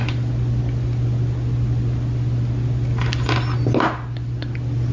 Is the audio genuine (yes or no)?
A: yes